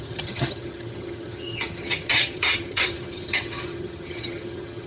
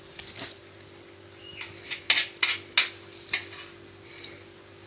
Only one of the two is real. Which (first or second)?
second